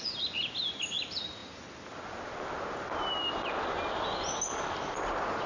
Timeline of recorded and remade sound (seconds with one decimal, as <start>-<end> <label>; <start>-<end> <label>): 0.0-5.5 recorded